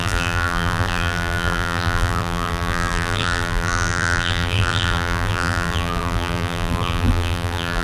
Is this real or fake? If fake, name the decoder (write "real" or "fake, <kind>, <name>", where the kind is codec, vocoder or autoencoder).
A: fake, vocoder, BigVGAN v2